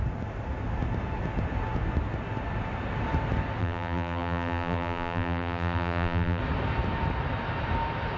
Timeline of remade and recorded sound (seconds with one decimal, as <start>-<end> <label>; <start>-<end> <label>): 0.0-3.6 recorded; 3.6-6.4 remade; 6.4-8.2 recorded